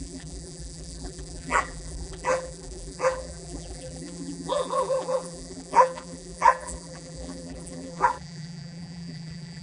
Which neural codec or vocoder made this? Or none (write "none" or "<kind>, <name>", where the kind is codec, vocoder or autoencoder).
vocoder, BigVGAN v2